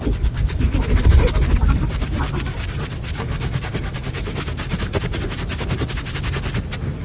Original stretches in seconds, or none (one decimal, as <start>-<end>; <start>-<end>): 0.0-0.4; 2.3-4.2; 5.9-7.0